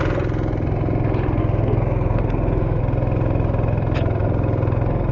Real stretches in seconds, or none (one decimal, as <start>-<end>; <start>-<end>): 0.0-1.4; 2.8-5.1